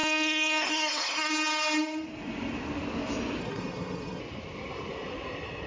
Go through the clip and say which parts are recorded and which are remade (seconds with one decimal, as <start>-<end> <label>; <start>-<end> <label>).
0.0-1.3 remade; 1.3-3.4 recorded; 3.4-4.2 remade; 4.2-5.7 recorded